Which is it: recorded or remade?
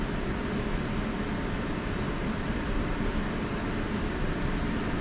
recorded